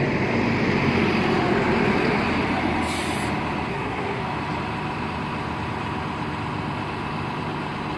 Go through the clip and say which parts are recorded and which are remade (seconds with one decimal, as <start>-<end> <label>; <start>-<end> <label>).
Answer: 0.0-3.7 recorded; 3.7-4.2 remade; 4.2-8.0 recorded